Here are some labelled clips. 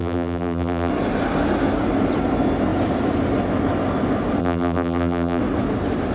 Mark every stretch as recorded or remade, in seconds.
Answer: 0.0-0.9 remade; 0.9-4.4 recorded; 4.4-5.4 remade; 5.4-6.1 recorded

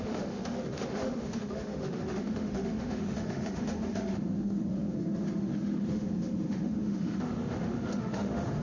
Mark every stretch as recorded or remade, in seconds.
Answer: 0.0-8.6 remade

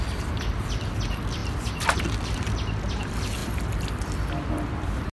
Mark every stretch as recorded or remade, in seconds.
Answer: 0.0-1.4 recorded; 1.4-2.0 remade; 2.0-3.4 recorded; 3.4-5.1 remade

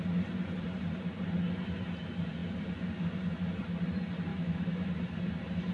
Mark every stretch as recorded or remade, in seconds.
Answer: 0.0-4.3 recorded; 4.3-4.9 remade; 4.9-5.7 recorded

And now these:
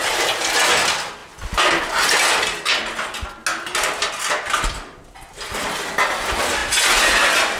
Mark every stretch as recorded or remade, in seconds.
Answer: 0.0-7.6 recorded

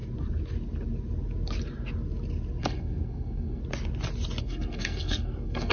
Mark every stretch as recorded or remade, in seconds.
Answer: 0.0-2.6 recorded; 2.6-3.6 remade; 3.6-4.4 recorded; 4.4-5.7 remade